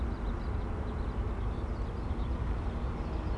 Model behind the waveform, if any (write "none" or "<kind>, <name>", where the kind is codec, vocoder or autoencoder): none